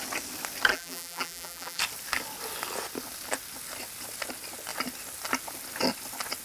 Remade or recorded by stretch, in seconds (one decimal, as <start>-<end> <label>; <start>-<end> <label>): 0.0-0.7 recorded; 0.7-1.8 remade; 1.8-6.4 recorded